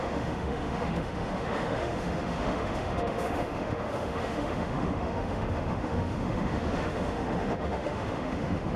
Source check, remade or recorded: remade